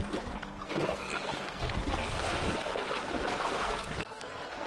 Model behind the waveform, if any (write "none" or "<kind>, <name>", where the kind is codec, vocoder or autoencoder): codec, SNAC